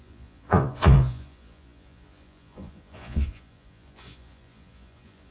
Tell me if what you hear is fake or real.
fake